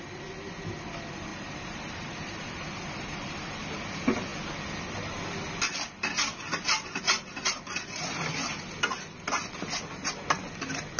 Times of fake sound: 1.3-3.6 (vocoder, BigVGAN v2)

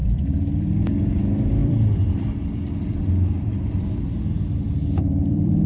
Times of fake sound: 0.0-0.7 (vocoder, BigVGAN v2); 1.6-3.9; 5.0-5.7

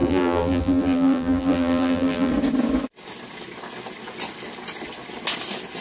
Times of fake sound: 0.0-2.3 (vocoder, BigVGAN v2)

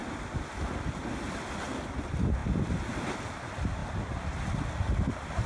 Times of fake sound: 0.8-3.8 (vocoder, BigVGAN v2)

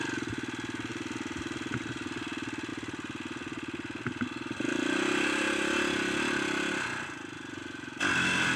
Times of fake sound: 0.9-1.8 (vocoder, BigVGAN v2)

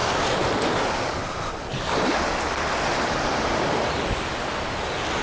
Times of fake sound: 2.9-3.9 (vocoder, BigVGAN v2)

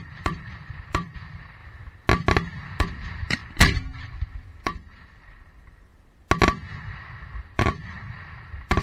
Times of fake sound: 0.0-1.6 (vocoder, BigVGAN v2); 2.8-3.4; 4.0-5.9; 6.9-8.8

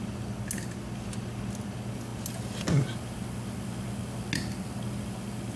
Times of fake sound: none